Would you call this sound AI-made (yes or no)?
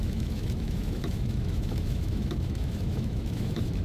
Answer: yes